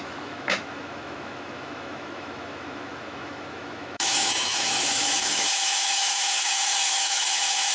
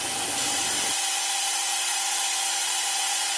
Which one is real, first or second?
second